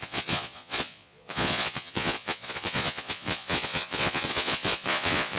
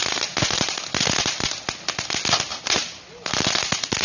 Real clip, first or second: second